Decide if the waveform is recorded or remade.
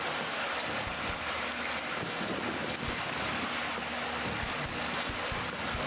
recorded